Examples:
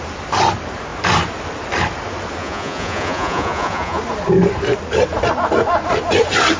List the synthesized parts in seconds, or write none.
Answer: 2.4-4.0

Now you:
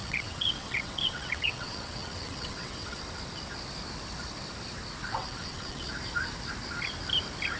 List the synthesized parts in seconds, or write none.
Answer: 0.0-3.0; 5.1-5.9